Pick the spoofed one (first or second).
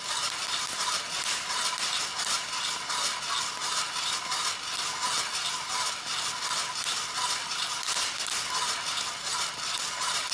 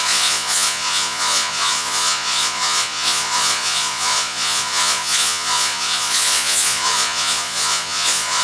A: second